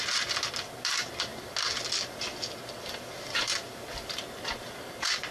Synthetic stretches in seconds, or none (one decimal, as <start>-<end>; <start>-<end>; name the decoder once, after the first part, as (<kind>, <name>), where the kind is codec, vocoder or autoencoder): none